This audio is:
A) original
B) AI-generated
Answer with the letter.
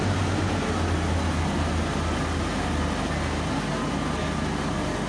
A